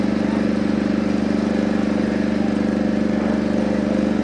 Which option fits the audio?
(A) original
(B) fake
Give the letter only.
A